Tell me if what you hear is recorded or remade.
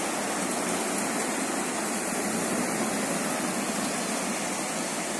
recorded